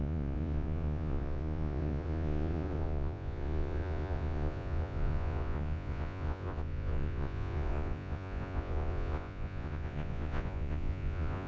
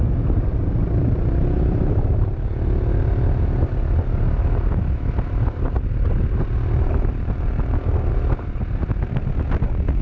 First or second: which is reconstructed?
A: first